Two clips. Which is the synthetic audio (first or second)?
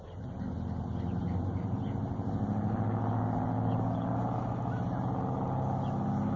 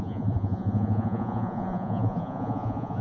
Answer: second